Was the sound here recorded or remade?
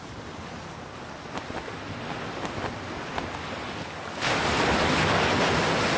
recorded